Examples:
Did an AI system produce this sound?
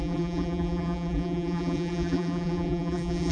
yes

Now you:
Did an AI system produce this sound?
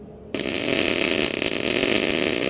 no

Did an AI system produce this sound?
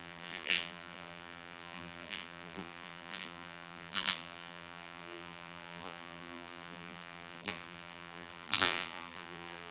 yes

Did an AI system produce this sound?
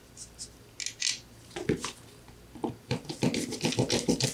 no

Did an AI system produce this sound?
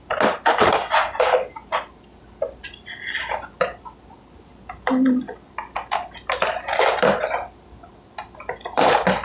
no